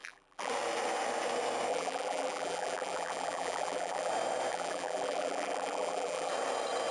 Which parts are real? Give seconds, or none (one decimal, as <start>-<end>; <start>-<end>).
0.5-1.7; 4.1-4.5; 6.3-6.9